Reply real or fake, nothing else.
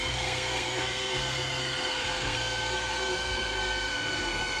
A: fake